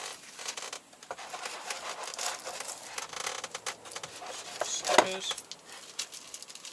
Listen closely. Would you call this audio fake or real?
real